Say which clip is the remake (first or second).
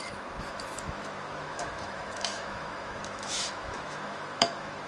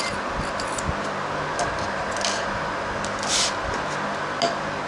first